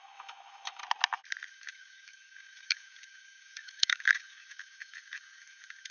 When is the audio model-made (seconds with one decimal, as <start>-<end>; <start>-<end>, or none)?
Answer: 0.0-0.8; 1.5-5.9